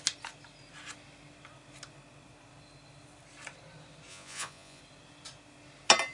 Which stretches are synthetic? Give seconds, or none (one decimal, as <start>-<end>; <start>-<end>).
4.1-4.8